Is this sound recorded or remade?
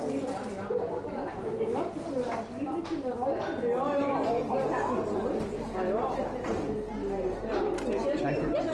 recorded